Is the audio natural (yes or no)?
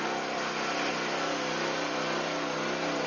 yes